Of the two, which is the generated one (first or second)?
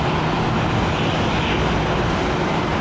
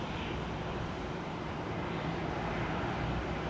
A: second